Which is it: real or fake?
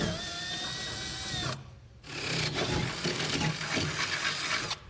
real